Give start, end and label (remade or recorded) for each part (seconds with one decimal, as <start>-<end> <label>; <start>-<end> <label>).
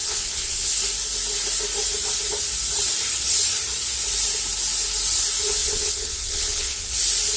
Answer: 0.0-0.7 remade; 0.7-5.6 recorded; 5.6-6.9 remade; 6.9-7.4 recorded